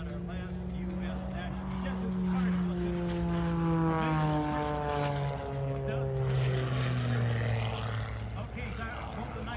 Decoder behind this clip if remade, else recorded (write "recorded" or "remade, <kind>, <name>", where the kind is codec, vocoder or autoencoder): recorded